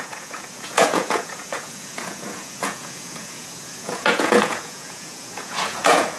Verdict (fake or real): fake